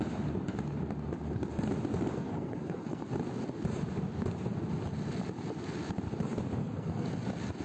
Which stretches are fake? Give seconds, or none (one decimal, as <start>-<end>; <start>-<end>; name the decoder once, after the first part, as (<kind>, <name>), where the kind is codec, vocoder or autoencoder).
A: 2.1-3.1 (codec, SNAC); 6.6-7.1